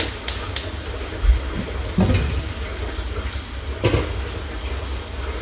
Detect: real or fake real